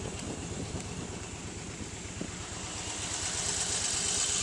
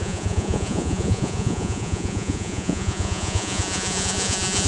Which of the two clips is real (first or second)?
first